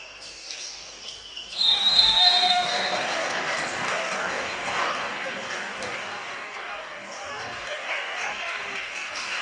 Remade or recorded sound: remade